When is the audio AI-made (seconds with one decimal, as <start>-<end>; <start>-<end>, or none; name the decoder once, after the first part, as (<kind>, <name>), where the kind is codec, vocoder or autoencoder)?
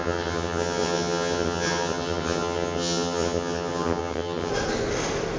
0.0-4.5 (vocoder, HiFi-GAN)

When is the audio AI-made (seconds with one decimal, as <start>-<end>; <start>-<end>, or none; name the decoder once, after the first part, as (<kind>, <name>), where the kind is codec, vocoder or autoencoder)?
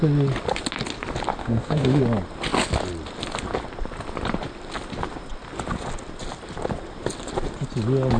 1.4-2.0 (autoencoder, DAC-VAE)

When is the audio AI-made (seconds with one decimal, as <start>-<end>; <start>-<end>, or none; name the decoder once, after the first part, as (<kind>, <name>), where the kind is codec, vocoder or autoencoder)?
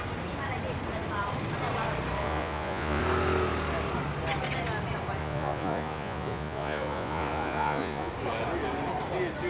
2.2-3.0 (vocoder, Vocos); 5.2-8.1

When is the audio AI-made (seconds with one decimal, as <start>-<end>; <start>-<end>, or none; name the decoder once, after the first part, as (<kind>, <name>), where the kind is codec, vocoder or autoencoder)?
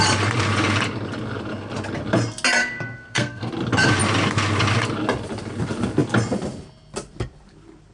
2.6-3.5 (codec, SNAC)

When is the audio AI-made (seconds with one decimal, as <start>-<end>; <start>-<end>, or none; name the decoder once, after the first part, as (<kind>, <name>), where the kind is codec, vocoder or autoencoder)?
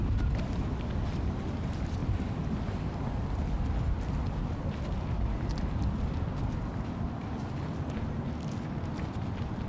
0.0-0.6 (vocoder, BigVGAN v2)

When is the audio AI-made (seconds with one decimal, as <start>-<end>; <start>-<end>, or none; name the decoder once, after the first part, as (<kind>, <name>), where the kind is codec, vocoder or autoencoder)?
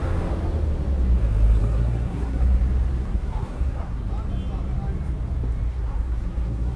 1.6-2.6 (codec, SNAC); 3.0-4.1; 5.7-6.8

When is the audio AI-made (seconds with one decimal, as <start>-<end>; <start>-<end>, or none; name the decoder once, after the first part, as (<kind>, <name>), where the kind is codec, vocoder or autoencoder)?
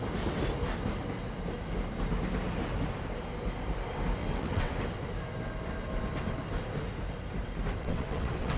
4.2-4.7 (vocoder, WaveNeXt); 7.8-8.6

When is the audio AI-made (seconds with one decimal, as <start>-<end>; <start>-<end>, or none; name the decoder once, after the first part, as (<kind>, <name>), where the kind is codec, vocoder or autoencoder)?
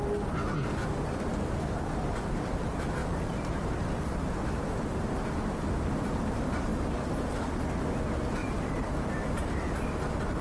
3.0-3.9 (vocoder, BigVGAN v2); 8.4-9.2